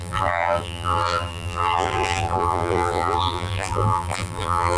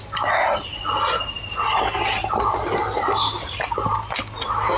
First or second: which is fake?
first